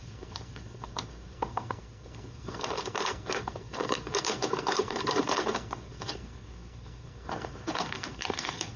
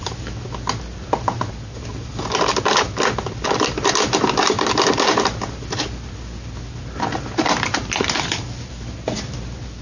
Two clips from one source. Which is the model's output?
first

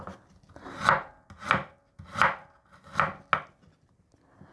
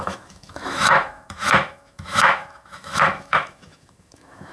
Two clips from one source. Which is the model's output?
second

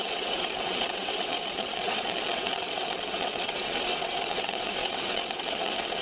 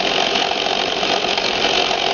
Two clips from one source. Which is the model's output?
first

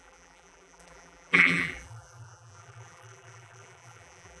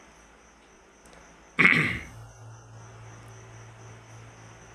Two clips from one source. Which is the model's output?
first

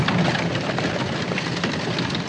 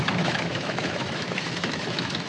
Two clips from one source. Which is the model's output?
second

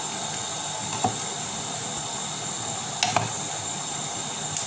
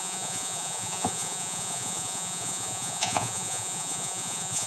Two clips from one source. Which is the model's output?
second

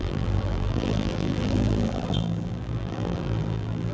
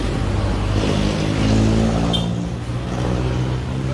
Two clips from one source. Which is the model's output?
first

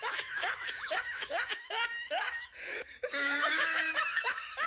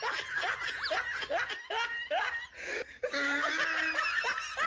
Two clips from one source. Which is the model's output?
first